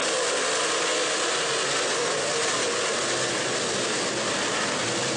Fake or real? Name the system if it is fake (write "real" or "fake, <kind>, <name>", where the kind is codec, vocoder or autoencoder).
real